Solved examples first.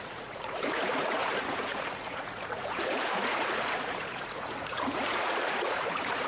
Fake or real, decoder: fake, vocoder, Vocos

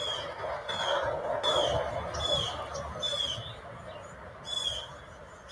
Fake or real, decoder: real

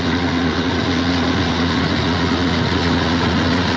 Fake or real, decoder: fake, vocoder, Vocos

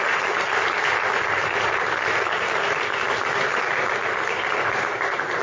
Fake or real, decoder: fake, vocoder, BigVGAN v2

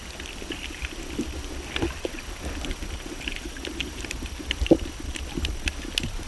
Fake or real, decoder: real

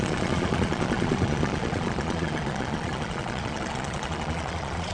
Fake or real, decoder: fake, vocoder, Vocos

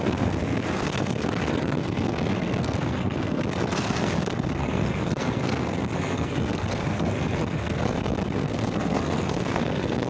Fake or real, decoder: fake, codec, SNAC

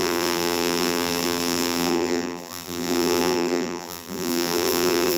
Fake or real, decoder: fake, vocoder, BigVGAN v2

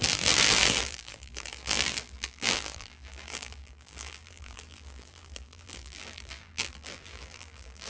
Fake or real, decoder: fake, vocoder, BigVGAN v2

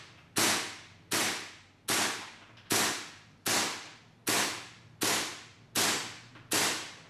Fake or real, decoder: real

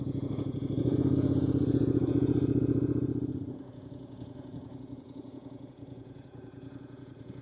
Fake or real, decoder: fake, vocoder, Vocos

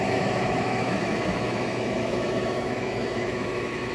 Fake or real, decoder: fake, autoencoder, DAC-VAE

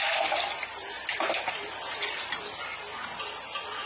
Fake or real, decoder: real